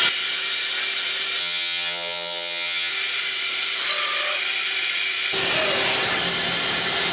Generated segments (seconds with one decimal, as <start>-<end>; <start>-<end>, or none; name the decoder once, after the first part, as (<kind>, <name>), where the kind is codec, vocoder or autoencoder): 1.4-2.9 (vocoder, HiFi-GAN)